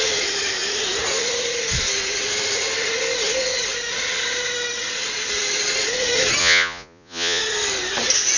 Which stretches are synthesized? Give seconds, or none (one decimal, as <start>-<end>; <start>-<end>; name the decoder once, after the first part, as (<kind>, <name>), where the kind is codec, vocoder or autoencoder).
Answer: 6.4-7.4 (vocoder, Vocos)